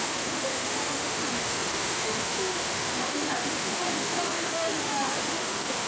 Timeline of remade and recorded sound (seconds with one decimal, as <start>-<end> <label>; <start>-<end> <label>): 0.0-5.9 remade